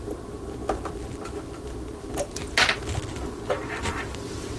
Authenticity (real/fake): real